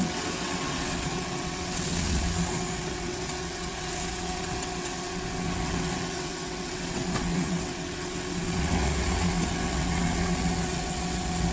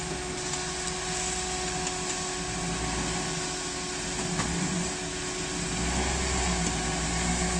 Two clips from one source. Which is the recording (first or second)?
second